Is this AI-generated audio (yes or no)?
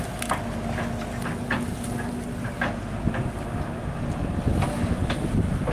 no